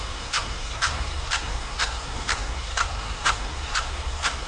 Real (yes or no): no